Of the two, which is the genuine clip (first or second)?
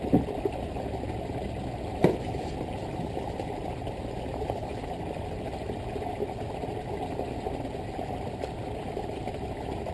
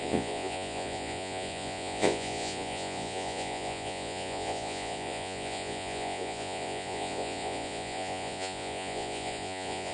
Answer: first